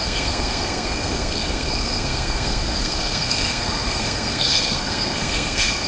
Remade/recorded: remade